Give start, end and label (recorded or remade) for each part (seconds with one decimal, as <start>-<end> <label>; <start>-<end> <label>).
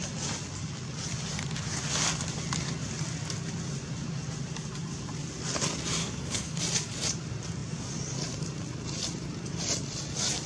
0.0-6.0 recorded; 6.0-6.6 remade; 6.6-10.5 recorded